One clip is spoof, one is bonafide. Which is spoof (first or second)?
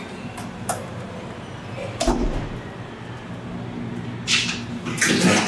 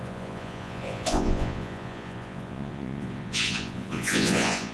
second